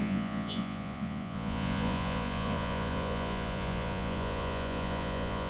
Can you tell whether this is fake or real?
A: fake